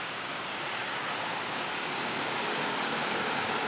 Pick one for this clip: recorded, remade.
remade